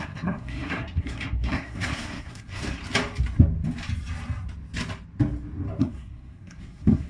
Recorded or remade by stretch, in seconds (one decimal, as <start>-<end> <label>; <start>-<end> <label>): 0.0-2.8 remade; 2.8-5.8 recorded; 5.8-7.1 remade